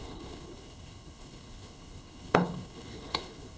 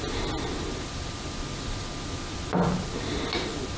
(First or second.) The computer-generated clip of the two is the first